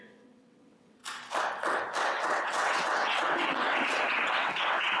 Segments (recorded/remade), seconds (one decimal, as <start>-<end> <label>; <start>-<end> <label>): 0.0-1.0 remade; 1.0-2.0 recorded; 2.0-5.0 remade